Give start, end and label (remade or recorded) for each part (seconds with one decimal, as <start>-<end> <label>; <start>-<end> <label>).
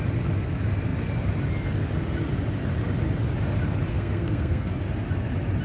0.0-3.9 recorded; 3.9-4.7 remade; 4.7-5.6 recorded